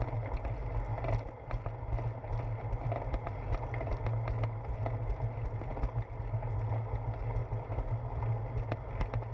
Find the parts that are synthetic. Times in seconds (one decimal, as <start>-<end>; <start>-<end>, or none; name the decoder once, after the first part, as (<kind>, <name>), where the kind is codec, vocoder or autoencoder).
7.4-8.2 (vocoder, BigVGAN v2)